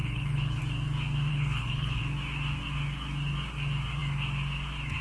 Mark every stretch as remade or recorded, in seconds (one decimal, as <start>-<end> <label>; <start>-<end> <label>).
0.0-0.6 remade; 0.6-1.3 recorded; 1.3-2.0 remade; 2.0-5.0 recorded